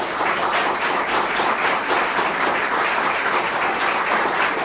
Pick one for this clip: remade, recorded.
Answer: remade